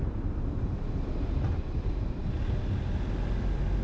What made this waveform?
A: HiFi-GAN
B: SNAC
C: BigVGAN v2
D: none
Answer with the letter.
D